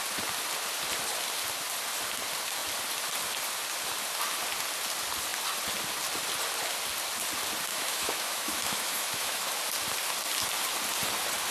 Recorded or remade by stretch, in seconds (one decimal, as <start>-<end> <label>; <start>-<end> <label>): 0.0-7.7 recorded; 7.7-9.6 remade; 9.6-11.5 recorded